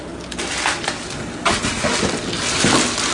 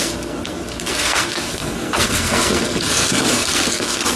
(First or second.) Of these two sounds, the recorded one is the first